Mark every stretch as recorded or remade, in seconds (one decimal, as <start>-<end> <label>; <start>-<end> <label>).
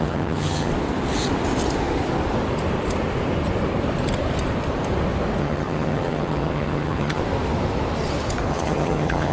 0.0-0.7 remade; 0.7-5.4 recorded; 5.4-7.2 remade; 7.2-8.5 recorded; 8.5-9.3 remade